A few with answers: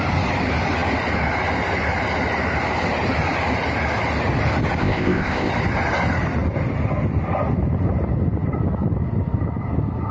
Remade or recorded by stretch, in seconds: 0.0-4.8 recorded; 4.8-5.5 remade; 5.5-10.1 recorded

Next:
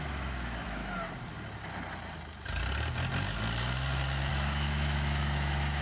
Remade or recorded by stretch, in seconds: 0.0-0.8 remade; 0.8-4.3 recorded; 4.3-5.8 remade

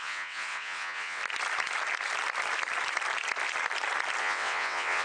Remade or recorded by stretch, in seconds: 0.0-1.2 remade; 1.2-4.2 recorded; 4.2-5.0 remade